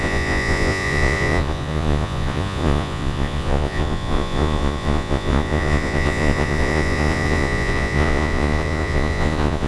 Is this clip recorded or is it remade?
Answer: remade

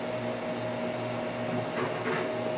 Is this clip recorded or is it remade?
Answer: recorded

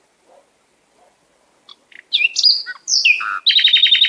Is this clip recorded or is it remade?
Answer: recorded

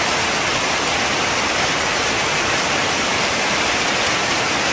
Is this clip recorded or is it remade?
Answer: recorded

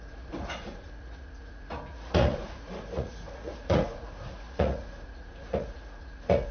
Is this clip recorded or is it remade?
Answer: remade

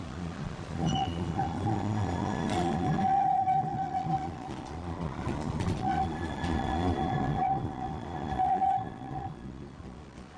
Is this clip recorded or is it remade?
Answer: remade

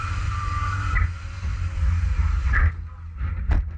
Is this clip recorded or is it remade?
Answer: recorded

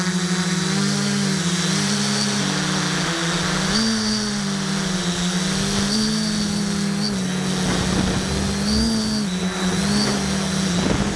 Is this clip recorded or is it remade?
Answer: recorded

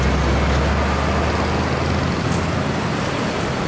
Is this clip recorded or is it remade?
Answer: recorded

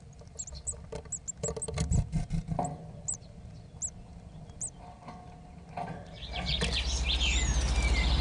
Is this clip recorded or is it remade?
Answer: recorded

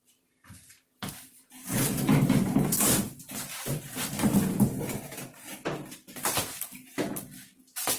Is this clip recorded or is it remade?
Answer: remade